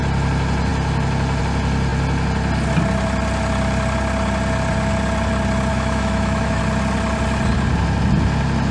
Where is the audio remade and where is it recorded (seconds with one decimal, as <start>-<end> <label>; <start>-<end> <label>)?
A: 0.0-5.7 recorded; 5.7-6.6 remade; 6.6-8.7 recorded